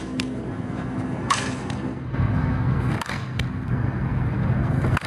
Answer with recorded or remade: remade